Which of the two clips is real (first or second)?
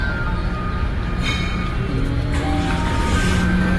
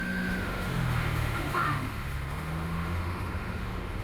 first